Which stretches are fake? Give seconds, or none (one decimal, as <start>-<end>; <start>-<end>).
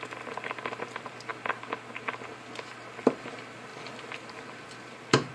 none